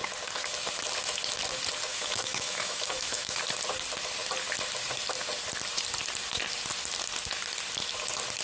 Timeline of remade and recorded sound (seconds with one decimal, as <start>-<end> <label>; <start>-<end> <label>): 0.0-1.9 recorded; 1.9-3.4 remade; 3.4-8.4 recorded